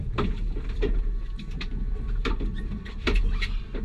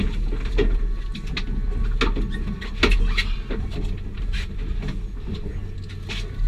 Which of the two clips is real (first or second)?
second